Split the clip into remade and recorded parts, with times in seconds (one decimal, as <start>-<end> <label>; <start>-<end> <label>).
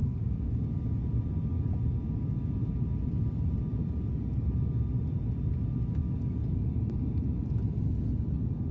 0.0-0.6 remade; 0.6-8.7 recorded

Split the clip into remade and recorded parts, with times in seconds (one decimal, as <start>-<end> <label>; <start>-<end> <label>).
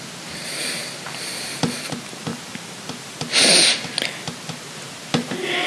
0.0-5.7 recorded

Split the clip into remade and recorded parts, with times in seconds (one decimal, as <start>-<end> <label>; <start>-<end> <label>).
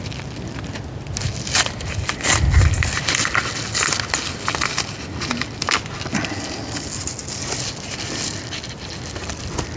0.0-9.8 recorded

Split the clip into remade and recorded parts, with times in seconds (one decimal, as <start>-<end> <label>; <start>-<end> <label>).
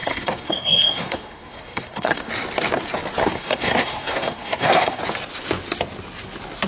0.0-2.3 remade; 2.3-3.2 recorded; 3.2-5.0 remade; 5.0-6.7 recorded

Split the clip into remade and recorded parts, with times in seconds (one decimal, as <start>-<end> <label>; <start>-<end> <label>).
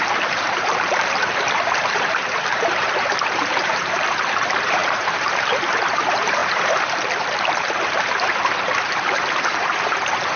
0.0-10.4 remade